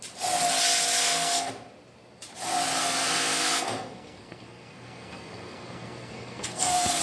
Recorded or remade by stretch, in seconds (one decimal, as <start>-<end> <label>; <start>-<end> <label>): 0.0-1.0 recorded; 1.0-1.5 remade; 1.5-2.8 recorded; 2.8-7.0 remade